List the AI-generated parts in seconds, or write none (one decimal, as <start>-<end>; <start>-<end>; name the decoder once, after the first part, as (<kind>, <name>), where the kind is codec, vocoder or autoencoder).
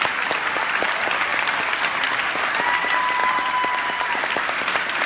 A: 0.0-5.1 (vocoder, BigVGAN v2)